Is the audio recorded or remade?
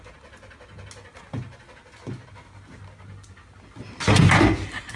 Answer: recorded